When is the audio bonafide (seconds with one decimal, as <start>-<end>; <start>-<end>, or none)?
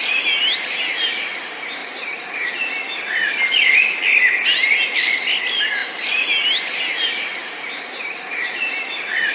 0.0-1.8; 2.5-7.4